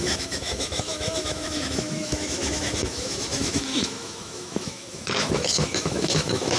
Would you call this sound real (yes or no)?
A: no